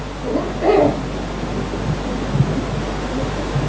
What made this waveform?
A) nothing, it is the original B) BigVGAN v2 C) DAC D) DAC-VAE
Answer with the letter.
A